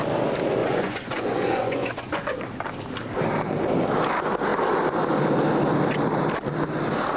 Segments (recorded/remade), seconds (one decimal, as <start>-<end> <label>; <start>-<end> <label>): 0.0-0.6 recorded; 0.6-2.3 remade; 2.3-7.2 recorded